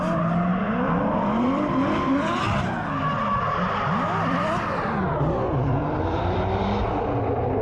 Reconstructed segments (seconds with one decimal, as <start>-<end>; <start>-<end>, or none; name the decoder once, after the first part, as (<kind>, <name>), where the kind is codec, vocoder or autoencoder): 0.5-2.4 (vocoder, BigVGAN v2); 5.5-7.1